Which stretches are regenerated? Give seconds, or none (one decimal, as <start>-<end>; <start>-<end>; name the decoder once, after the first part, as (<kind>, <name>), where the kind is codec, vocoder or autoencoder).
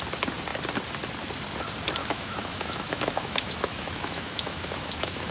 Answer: 2.0-5.3 (autoencoder, DAC-VAE)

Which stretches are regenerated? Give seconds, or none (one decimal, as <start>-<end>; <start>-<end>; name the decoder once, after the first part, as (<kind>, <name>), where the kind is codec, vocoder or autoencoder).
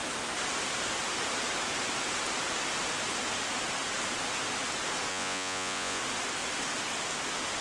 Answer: 5.1-6.0 (vocoder, Vocos)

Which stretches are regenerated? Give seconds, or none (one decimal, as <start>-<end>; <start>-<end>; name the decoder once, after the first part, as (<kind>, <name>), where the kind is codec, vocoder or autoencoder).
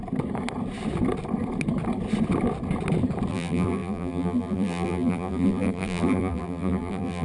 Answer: 3.3-7.2 (vocoder, BigVGAN v2)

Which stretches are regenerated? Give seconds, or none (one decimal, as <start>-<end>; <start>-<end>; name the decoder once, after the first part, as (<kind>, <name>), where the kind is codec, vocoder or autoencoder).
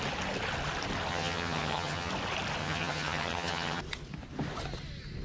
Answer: 1.1-2.1 (vocoder, HiFi-GAN); 2.6-3.8